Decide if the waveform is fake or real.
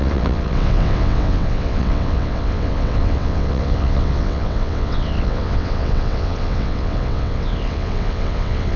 fake